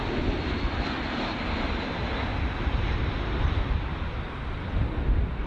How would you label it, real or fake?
real